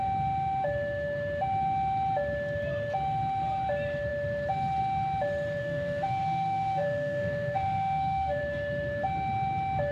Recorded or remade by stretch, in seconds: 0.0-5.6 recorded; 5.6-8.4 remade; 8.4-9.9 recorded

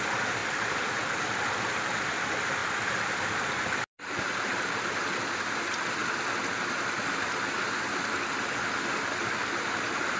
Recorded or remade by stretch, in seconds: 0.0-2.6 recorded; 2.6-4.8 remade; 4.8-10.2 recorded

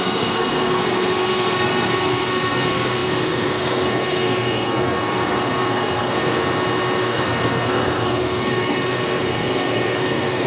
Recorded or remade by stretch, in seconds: 0.0-6.4 remade; 6.4-7.0 recorded; 7.0-10.5 remade